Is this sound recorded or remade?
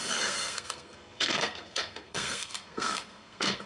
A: remade